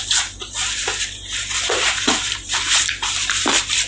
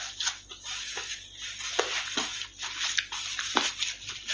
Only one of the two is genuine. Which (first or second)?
second